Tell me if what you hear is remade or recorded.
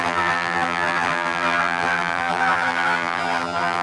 remade